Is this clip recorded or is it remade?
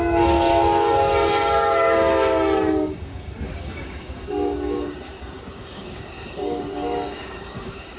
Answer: remade